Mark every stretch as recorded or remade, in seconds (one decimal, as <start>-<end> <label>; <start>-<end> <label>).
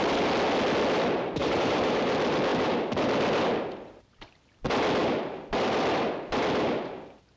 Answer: 0.0-1.4 recorded; 1.4-2.0 remade; 2.0-7.4 recorded